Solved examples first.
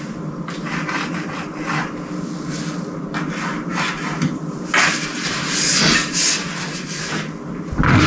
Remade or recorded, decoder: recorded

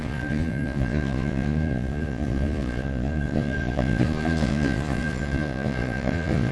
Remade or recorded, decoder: remade, vocoder, Vocos